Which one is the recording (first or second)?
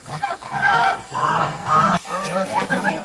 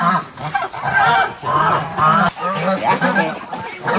second